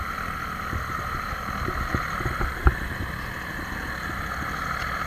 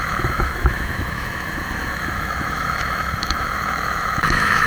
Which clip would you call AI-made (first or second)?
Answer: second